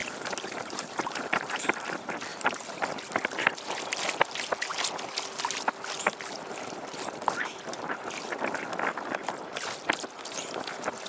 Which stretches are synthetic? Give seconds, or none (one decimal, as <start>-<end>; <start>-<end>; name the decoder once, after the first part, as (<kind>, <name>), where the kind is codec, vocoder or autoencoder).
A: 0.0-1.6 (vocoder, BigVGAN v2); 2.3-3.0